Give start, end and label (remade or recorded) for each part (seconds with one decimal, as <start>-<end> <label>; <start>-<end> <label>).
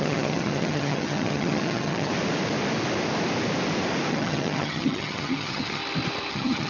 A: 0.0-2.1 remade; 2.1-4.1 recorded; 4.1-5.8 remade; 5.8-6.3 recorded; 6.3-6.7 remade